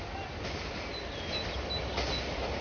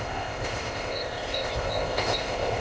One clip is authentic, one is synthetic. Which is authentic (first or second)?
first